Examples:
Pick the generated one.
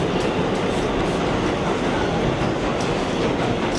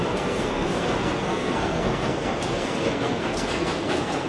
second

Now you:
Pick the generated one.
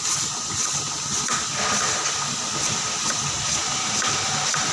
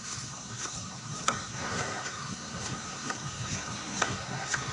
second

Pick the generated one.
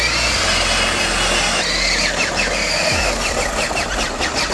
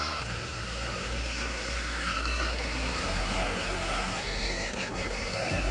second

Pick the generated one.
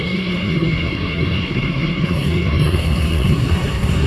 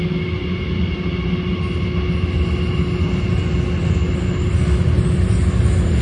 first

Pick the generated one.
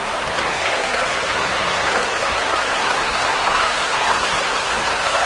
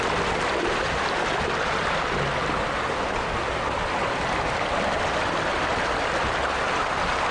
first